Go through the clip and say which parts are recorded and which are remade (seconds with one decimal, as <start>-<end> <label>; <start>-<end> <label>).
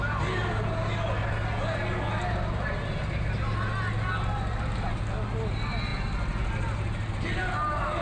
0.0-8.0 recorded